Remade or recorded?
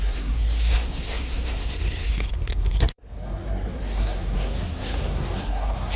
remade